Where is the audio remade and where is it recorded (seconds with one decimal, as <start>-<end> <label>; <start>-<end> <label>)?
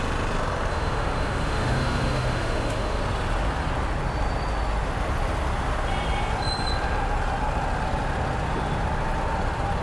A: 0.0-0.7 recorded; 0.7-3.0 remade; 3.0-9.8 recorded